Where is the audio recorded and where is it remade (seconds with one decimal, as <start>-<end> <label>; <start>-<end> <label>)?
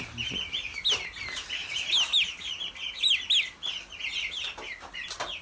0.0-5.4 recorded